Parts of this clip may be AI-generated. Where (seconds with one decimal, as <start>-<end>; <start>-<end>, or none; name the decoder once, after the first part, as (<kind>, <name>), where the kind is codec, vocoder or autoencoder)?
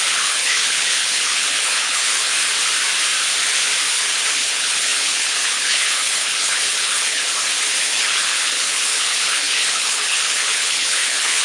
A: 0.0-2.3 (codec, HILCodec); 3.9-7.2; 7.8-11.4